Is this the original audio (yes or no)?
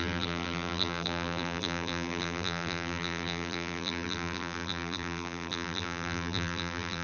no